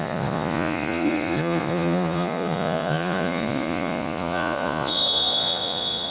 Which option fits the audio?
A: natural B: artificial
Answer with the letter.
B